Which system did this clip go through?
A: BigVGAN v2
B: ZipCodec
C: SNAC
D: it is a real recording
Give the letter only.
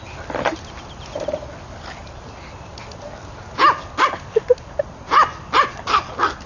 D